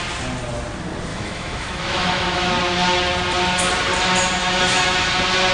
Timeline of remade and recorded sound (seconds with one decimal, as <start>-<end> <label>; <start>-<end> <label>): 0.0-1.1 recorded; 1.1-2.5 remade; 2.5-4.4 recorded; 4.4-5.1 remade; 5.1-5.5 recorded